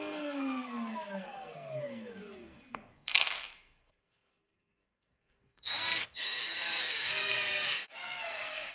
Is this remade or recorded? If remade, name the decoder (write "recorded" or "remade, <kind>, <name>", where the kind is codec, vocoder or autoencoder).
remade, codec, SNAC